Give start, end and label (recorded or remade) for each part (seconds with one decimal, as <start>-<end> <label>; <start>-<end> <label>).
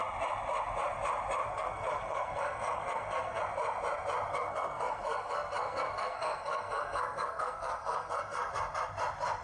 0.0-1.4 recorded; 1.4-3.4 remade; 3.4-4.3 recorded; 4.3-8.5 remade; 8.5-9.4 recorded